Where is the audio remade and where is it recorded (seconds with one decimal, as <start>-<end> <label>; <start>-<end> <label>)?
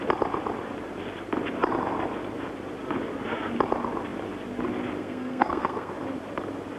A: 0.0-5.0 recorded; 5.0-5.9 remade; 5.9-6.8 recorded